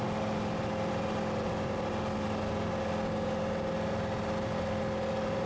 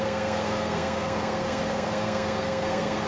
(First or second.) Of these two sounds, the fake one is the second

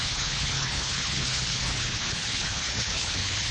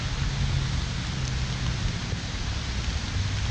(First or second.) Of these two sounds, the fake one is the first